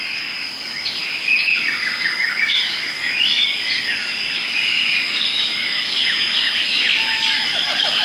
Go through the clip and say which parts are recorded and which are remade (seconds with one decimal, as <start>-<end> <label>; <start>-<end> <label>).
0.0-8.0 remade